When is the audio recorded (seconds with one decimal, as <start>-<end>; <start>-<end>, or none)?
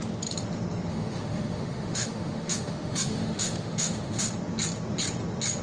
0.0-0.9; 4.3-5.6